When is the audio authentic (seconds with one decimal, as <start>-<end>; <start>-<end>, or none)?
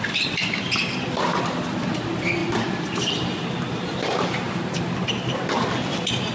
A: 0.0-6.3